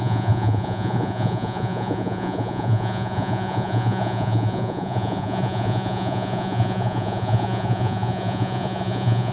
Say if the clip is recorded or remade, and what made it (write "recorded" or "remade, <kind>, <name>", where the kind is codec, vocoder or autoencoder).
remade, vocoder, Vocos